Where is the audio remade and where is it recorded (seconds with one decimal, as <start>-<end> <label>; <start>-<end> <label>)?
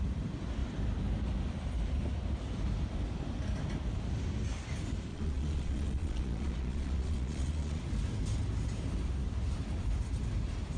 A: 0.0-5.1 recorded; 5.1-7.8 remade; 7.8-10.8 recorded